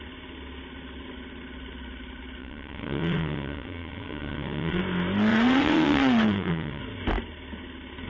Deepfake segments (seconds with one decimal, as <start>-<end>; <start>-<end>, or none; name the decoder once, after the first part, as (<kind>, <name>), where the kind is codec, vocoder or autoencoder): 2.4-4.8 (vocoder, WaveNeXt); 5.3-6.8